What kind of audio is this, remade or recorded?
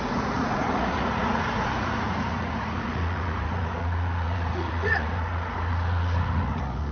remade